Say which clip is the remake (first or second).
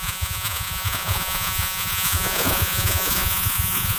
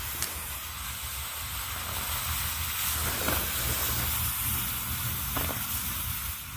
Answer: first